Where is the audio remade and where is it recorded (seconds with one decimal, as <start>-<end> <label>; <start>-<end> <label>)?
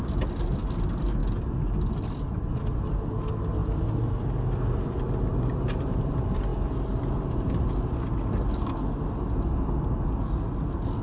0.0-5.3 recorded; 5.3-6.1 remade; 6.1-11.0 recorded